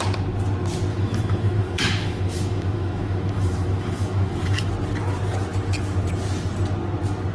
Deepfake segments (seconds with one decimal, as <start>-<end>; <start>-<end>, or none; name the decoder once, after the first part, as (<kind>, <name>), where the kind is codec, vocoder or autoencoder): 0.9-4.7 (autoencoder, DAC-VAE)